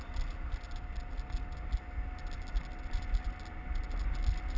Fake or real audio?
real